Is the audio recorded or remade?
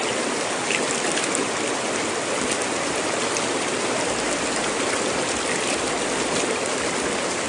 recorded